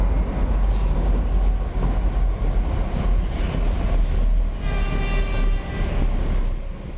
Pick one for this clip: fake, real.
real